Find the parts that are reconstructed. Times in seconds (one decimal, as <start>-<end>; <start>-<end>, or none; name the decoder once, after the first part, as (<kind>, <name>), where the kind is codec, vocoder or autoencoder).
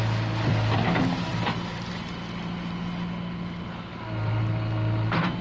1.3-1.9 (vocoder, BigVGAN v2); 3.9-5.4